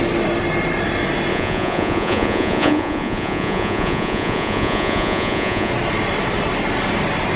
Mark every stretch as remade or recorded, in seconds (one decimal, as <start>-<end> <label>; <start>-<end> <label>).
0.0-1.3 recorded; 1.3-5.7 remade; 5.7-7.4 recorded